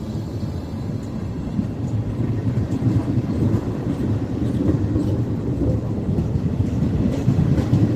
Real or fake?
real